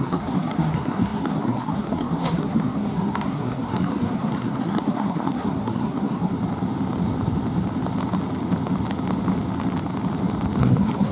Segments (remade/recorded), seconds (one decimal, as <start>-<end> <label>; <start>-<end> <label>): 0.0-6.3 remade; 6.3-10.6 recorded; 10.6-11.1 remade